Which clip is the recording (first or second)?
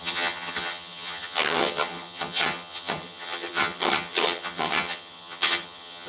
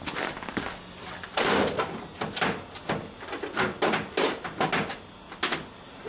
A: second